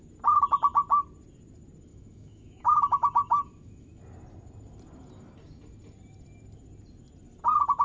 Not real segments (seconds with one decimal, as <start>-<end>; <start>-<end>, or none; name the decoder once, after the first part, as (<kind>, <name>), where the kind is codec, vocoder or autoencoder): 1.9-4.0 (autoencoder, DAC-VAE)